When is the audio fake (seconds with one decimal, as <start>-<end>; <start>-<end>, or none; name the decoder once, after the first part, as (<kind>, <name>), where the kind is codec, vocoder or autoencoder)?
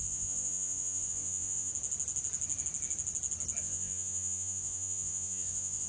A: 0.0-1.7 (vocoder, Vocos); 3.6-5.9